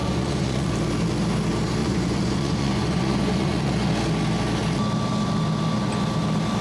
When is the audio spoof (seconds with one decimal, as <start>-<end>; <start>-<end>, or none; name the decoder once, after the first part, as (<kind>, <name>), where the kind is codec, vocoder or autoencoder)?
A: 0.0-0.7 (vocoder, Vocos); 1.8-3.9